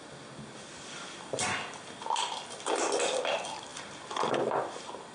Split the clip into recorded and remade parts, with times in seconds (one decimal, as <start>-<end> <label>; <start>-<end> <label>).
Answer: 0.0-0.7 recorded; 0.7-2.7 remade; 2.7-5.1 recorded